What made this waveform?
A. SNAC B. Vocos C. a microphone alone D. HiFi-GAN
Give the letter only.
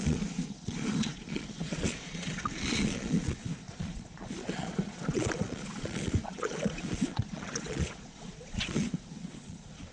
B